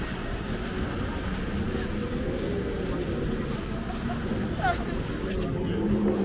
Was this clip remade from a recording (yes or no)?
no